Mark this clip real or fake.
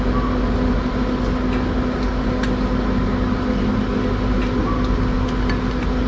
real